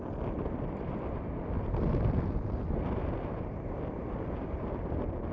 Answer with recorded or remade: recorded